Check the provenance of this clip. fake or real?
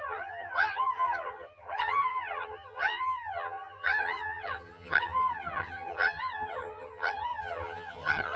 fake